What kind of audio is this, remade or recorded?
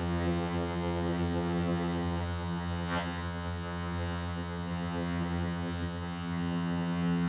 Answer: remade